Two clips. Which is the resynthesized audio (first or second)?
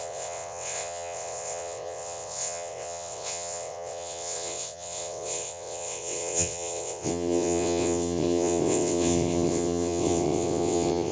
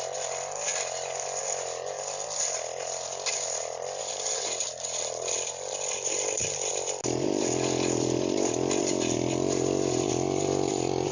first